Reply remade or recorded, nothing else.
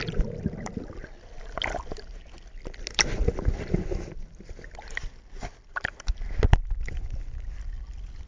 recorded